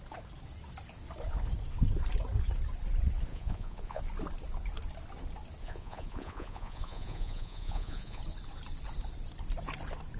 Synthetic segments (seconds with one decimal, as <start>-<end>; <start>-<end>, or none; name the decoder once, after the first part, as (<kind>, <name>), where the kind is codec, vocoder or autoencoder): 3.3-4.0 (vocoder, Vocos); 5.6-8.2